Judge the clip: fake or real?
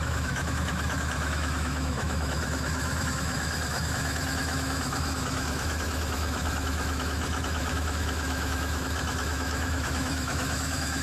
fake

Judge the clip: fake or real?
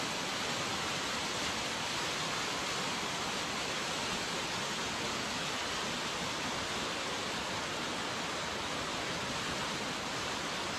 real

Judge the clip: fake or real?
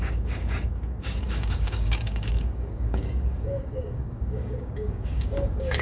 fake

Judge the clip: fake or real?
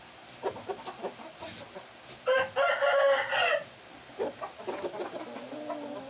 real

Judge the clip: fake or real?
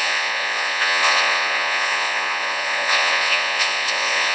fake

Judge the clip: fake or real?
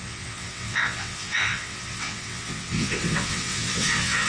fake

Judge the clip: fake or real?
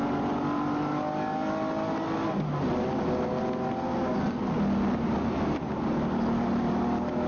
real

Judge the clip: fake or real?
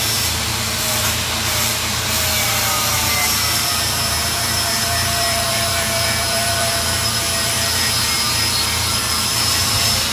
fake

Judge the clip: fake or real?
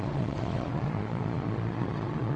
fake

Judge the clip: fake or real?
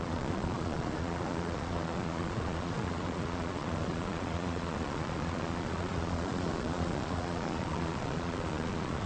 fake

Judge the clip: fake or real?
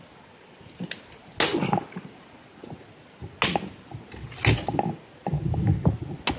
real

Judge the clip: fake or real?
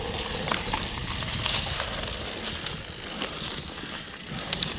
real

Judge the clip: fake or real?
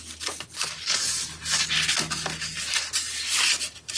real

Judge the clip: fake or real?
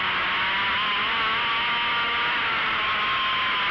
real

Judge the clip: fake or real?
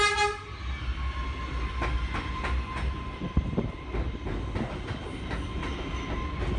real